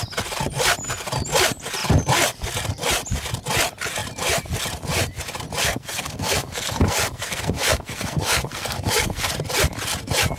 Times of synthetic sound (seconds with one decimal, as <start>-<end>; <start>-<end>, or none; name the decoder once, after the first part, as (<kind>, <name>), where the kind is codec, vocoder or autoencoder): 5.6-9.3 (codec, SNAC)